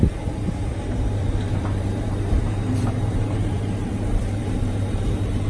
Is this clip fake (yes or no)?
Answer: yes